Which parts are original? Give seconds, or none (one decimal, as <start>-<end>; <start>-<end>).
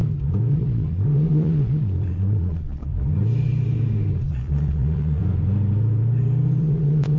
0.0-0.5; 2.9-4.3; 5.2-6.6